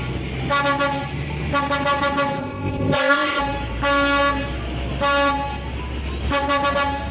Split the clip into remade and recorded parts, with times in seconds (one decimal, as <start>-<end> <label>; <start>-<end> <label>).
0.0-2.4 recorded; 2.4-3.4 remade; 3.4-7.1 recorded